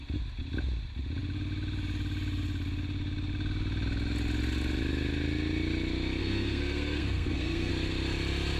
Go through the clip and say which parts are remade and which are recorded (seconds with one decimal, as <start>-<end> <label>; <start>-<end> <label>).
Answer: 0.0-6.2 recorded; 6.2-7.7 remade; 7.7-8.6 recorded